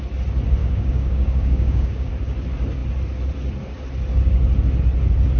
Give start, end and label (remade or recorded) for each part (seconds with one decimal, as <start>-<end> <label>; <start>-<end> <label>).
0.0-0.6 recorded; 0.6-2.1 remade; 2.1-5.4 recorded